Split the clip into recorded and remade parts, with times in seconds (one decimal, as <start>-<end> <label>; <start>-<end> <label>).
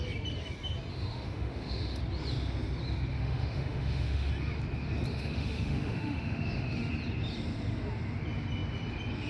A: 0.0-0.9 recorded; 0.9-2.0 remade; 2.0-3.1 recorded; 3.1-4.3 remade; 4.3-5.1 recorded; 5.1-6.9 remade; 6.9-9.3 recorded